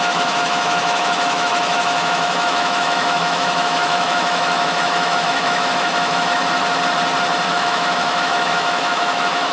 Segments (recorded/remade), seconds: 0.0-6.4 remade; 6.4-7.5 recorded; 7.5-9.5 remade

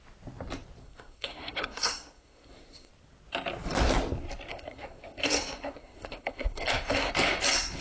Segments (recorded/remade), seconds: 0.0-0.8 recorded; 0.8-2.9 remade; 2.9-4.5 recorded; 4.5-7.1 remade; 7.1-7.8 recorded

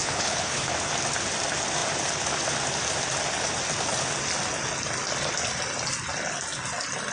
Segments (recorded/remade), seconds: 0.0-0.7 remade; 0.7-7.1 recorded

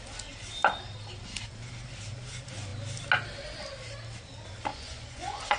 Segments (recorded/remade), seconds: 0.0-4.7 recorded; 4.7-5.6 remade

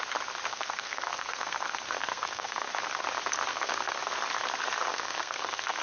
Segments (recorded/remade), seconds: 0.0-0.5 recorded; 0.5-2.7 remade; 2.7-3.5 recorded; 3.5-4.0 remade; 4.0-4.9 recorded; 4.9-5.8 remade

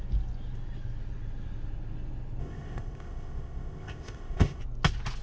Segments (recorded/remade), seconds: 0.0-2.4 recorded; 2.4-4.6 remade; 4.6-5.2 recorded

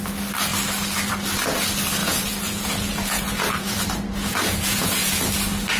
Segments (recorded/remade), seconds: 0.0-2.0 recorded; 2.0-5.3 remade; 5.3-5.8 recorded